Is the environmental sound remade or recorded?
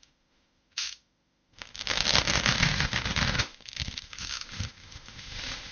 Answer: remade